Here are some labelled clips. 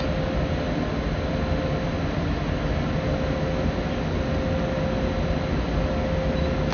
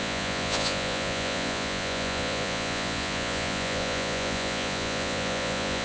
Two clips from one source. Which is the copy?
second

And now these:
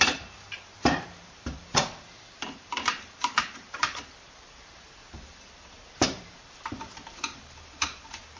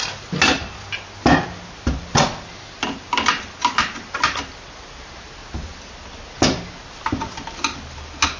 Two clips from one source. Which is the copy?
first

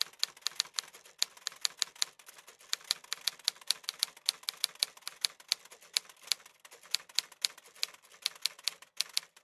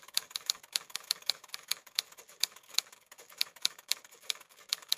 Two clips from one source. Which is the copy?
second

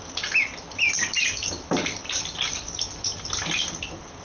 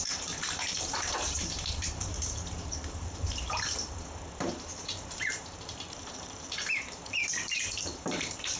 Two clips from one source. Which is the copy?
second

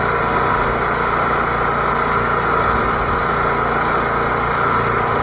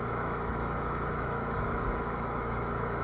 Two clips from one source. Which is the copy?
second